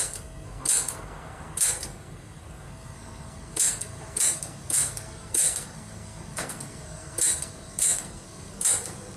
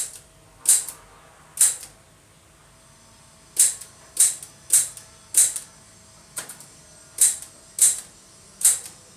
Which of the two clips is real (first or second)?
second